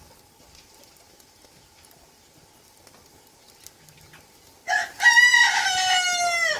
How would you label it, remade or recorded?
recorded